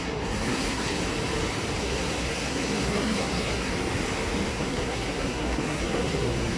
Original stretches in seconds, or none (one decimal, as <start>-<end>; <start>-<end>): 1.0-1.8; 3.7-4.5